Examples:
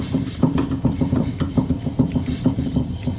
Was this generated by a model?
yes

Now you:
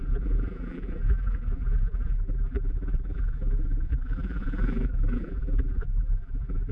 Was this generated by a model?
yes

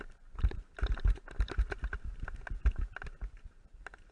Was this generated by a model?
yes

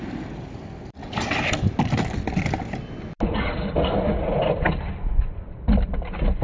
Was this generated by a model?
no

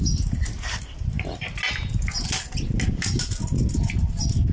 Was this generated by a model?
no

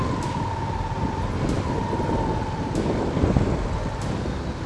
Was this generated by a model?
no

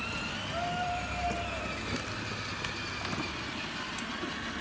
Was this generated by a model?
no